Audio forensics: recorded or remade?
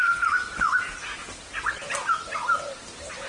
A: recorded